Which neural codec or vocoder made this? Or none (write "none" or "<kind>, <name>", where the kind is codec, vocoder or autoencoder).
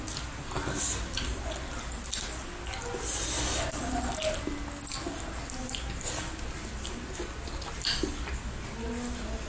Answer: none